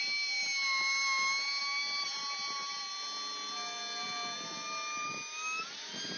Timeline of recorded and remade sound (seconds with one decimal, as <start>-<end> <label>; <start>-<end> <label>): 0.0-6.2 recorded